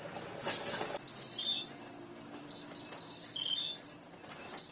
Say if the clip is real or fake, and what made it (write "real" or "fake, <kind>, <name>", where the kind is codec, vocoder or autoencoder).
real